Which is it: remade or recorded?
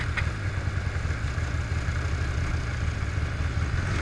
recorded